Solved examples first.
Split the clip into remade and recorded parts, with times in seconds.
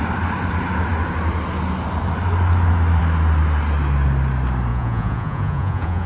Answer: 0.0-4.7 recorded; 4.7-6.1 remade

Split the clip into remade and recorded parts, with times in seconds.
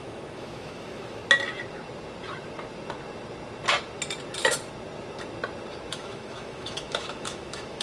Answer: 0.0-1.2 remade; 1.2-5.9 recorded; 5.9-7.8 remade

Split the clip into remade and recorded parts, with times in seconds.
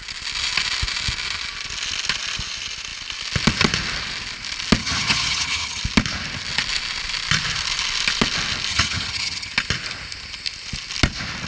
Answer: 0.0-4.8 recorded; 4.8-5.8 remade; 5.8-8.7 recorded; 8.7-9.5 remade; 9.5-11.5 recorded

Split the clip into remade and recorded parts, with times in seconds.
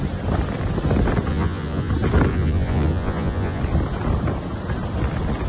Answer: 0.0-1.3 recorded; 1.3-1.9 remade; 1.9-2.3 recorded; 2.3-3.6 remade; 3.6-5.5 recorded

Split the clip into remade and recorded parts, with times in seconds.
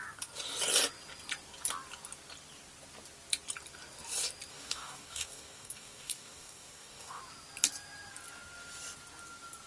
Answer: 0.0-4.5 recorded; 4.5-7.2 remade; 7.2-9.7 recorded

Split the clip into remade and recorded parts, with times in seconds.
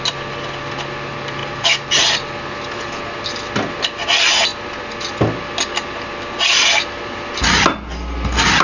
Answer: 0.0-8.6 recorded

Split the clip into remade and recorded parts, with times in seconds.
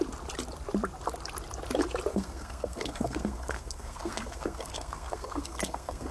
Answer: 0.0-2.1 recorded; 2.1-6.1 remade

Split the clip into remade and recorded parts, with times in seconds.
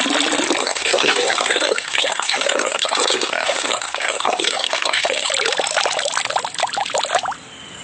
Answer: 0.0-0.6 recorded; 0.6-5.3 remade; 5.3-7.8 recorded